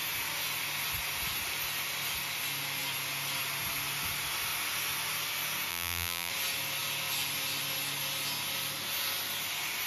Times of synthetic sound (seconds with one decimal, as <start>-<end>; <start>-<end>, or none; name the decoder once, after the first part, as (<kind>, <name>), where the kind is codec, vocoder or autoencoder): 5.7-6.3 (vocoder, BigVGAN v2)